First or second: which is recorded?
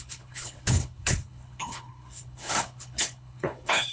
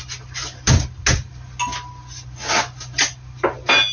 second